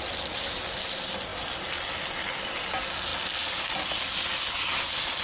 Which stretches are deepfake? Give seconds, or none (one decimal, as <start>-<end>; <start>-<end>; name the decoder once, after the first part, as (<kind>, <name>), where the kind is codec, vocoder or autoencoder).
none